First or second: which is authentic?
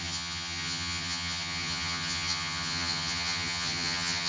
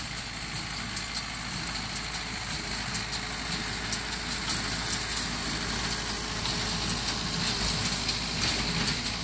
second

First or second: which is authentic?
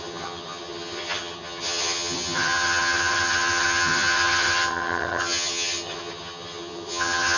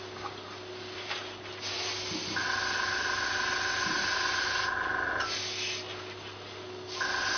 second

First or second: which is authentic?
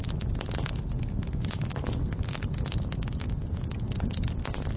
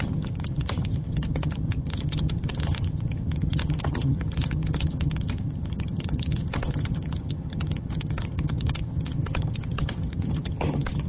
first